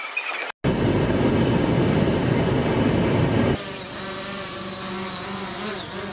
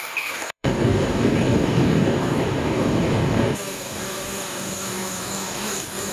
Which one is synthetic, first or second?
second